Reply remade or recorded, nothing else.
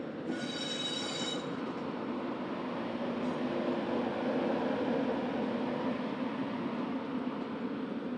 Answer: recorded